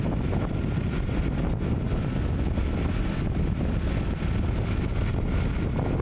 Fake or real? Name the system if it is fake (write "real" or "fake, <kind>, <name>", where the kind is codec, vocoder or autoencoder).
real